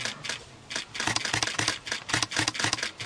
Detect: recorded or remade recorded